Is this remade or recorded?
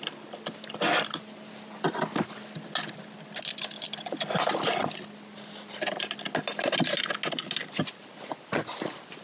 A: recorded